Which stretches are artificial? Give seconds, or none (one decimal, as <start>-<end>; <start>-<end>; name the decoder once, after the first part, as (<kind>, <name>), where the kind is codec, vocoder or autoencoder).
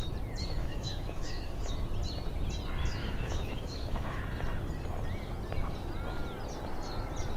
0.6-1.7 (autoencoder, DAC-VAE); 3.0-4.2